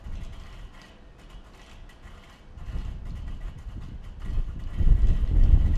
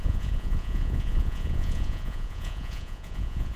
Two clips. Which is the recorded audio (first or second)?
first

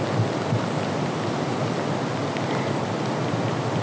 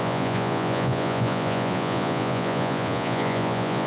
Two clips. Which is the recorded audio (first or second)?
first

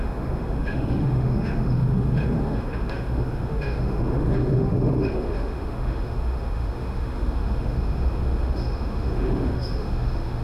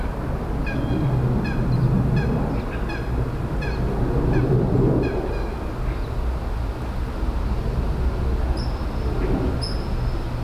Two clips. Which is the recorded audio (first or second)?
second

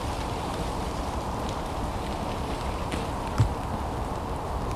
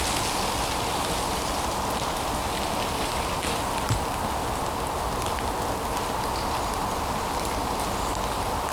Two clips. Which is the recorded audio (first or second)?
second